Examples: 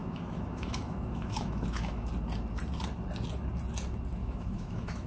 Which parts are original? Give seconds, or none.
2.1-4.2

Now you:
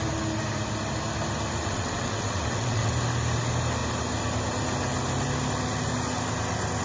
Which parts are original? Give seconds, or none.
0.0-1.6; 2.9-6.8

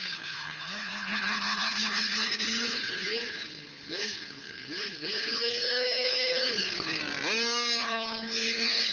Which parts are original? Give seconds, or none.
7.0-7.8

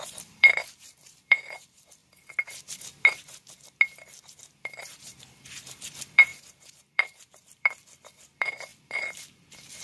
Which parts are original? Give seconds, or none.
2.0-4.6; 8.7-9.4

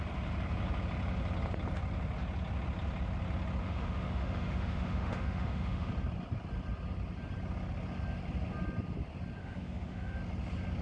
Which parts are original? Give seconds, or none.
0.0-3.6; 5.9-9.4; 10.2-10.8